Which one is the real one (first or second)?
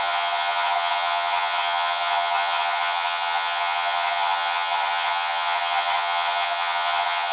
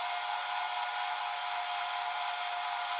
second